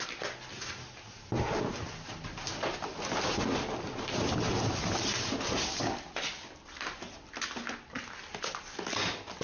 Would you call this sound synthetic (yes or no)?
no